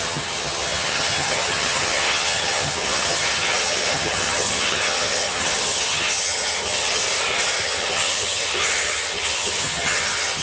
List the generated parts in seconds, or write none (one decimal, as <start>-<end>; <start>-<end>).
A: 0.0-7.0; 7.6-10.4